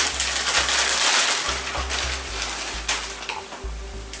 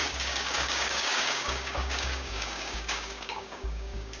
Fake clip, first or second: second